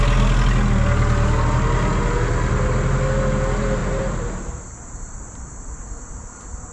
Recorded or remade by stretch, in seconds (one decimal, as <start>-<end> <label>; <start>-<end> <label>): 0.0-3.8 recorded; 3.8-6.7 remade

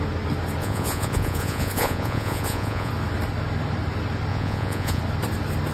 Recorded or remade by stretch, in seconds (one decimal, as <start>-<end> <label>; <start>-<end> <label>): 0.0-0.6 recorded; 0.6-2.9 remade; 2.9-4.3 recorded; 4.3-5.0 remade; 5.0-5.7 recorded

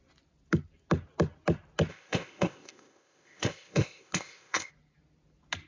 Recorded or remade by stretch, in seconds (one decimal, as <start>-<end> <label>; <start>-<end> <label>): 0.0-1.9 recorded; 1.9-4.7 remade; 4.7-5.7 recorded